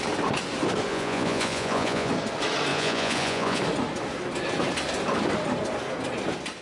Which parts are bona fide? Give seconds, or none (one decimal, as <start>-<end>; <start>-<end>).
0.0-0.9; 2.1-2.7; 3.6-6.6